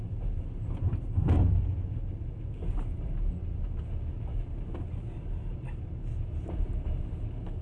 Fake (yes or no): no